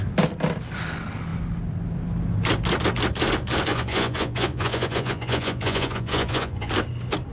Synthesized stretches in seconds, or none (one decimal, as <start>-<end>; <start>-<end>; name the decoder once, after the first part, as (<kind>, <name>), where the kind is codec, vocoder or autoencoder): 3.7-6.7 (vocoder, Vocos)